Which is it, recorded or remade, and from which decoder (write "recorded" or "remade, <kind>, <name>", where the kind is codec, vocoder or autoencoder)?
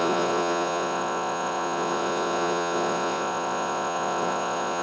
remade, vocoder, Vocos